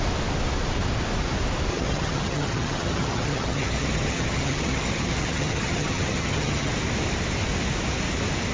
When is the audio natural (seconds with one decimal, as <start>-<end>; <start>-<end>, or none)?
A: 0.0-1.7; 6.7-8.5